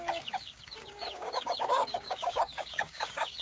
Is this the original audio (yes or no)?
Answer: no